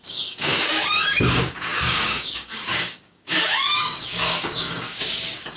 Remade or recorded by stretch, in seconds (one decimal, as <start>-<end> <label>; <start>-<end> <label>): 0.0-5.6 remade